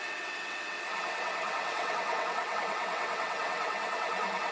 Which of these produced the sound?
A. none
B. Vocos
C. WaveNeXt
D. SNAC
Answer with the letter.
C